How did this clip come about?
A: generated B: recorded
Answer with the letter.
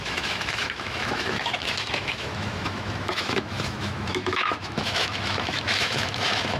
A